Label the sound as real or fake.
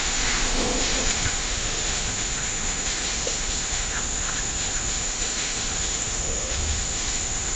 fake